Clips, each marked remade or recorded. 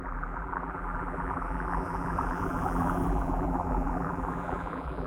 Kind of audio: remade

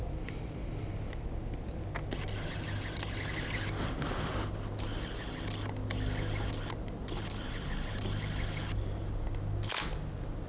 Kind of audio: recorded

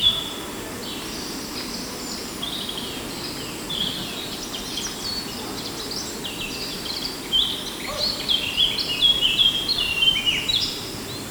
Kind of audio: recorded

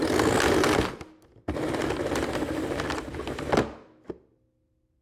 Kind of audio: recorded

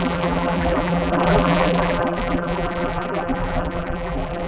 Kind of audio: remade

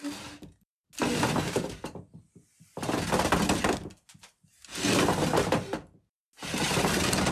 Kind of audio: recorded